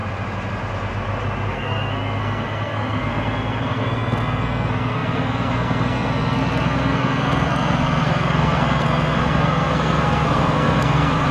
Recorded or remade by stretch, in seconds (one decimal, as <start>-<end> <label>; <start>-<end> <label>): 0.0-1.5 recorded; 1.5-11.3 remade